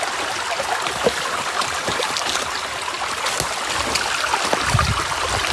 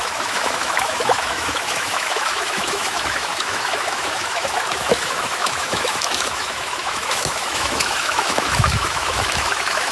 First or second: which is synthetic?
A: second